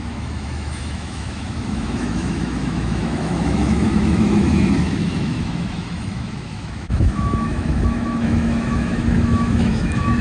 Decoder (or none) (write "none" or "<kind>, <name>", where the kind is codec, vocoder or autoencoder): autoencoder, DAC-VAE